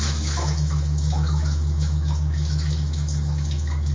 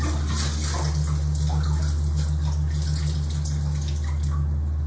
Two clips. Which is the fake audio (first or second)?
first